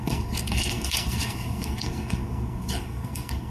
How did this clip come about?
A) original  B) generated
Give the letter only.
B